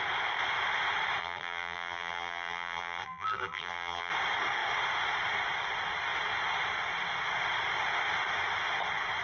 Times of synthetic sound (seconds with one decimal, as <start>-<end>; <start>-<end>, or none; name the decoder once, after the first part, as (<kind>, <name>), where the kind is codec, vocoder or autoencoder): 1.2-4.1 (vocoder, BigVGAN v2)